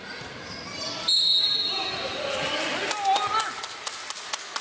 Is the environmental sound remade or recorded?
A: recorded